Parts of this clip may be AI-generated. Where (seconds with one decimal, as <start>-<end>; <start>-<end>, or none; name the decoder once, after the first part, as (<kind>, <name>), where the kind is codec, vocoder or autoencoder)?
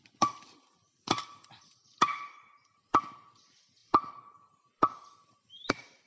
0.0-6.1 (vocoder, BigVGAN v2)